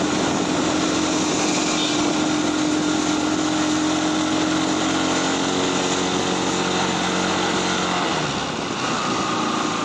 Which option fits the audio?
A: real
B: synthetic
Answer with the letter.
A